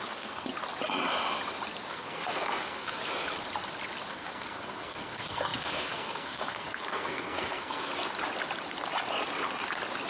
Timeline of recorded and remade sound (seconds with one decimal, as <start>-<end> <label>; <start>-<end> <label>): 0.0-0.5 remade; 0.5-1.9 recorded; 1.9-3.0 remade; 3.0-4.1 recorded; 4.1-7.9 remade; 7.9-10.1 recorded